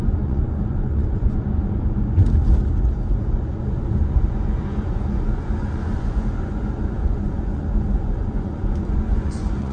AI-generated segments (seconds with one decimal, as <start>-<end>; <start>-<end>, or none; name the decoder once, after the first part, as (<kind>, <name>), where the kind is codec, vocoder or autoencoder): 0.0-2.2 (vocoder, Vocos); 3.2-9.7